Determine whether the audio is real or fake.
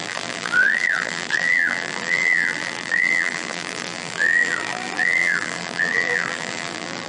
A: fake